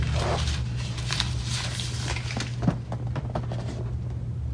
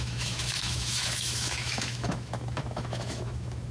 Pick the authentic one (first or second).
first